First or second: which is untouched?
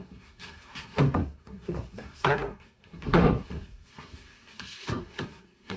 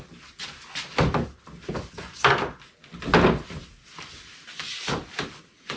second